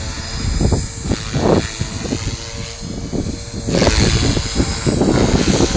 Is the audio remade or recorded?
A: recorded